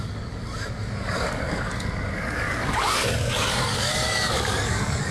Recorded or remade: remade